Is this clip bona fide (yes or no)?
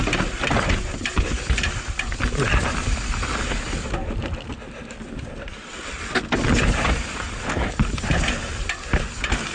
yes